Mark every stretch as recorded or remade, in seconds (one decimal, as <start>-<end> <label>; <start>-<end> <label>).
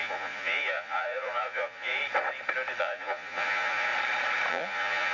0.0-2.0 remade; 2.0-2.8 recorded; 2.8-3.9 remade; 3.9-4.5 recorded; 4.5-5.1 remade